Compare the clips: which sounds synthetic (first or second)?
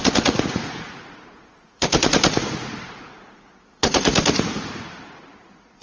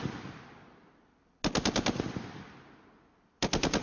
first